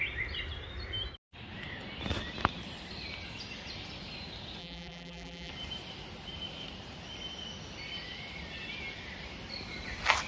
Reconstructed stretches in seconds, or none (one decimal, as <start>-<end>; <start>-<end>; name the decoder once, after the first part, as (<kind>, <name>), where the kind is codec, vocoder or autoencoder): 4.6-5.5 (vocoder, BigVGAN v2)